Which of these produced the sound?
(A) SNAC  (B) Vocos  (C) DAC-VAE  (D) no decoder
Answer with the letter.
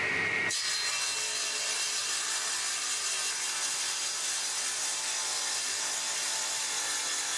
D